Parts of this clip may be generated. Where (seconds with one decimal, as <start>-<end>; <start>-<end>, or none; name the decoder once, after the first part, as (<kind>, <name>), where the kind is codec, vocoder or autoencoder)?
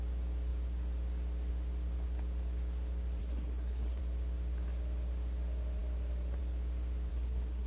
3.2-4.0 (codec, SNAC); 7.1-7.7